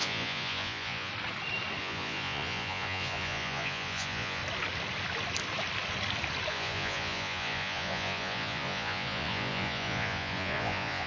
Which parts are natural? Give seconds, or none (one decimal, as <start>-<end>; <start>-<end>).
1.1-1.8; 4.4-6.5